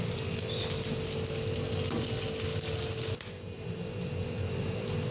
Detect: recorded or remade recorded